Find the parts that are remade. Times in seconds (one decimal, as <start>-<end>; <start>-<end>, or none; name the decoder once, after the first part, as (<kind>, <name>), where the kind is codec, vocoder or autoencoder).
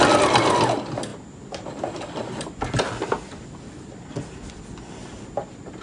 1.1-4.6 (vocoder, BigVGAN v2)